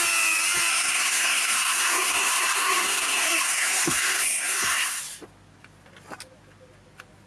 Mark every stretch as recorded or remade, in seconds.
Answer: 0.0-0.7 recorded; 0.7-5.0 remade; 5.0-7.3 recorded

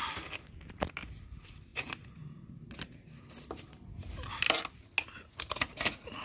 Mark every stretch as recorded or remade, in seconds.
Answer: 0.0-6.2 recorded

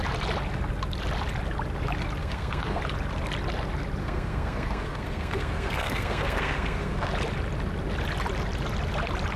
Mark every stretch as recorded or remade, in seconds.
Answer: 0.0-2.2 recorded; 2.2-2.8 remade; 2.8-4.0 recorded; 4.0-7.1 remade; 7.1-9.4 recorded